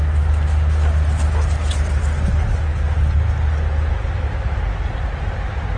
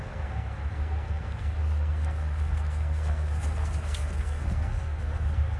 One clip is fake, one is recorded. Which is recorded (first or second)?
first